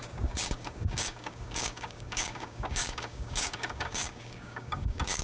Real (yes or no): no